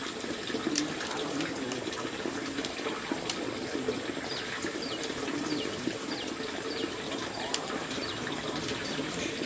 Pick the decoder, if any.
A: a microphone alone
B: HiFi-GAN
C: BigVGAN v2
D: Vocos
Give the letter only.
C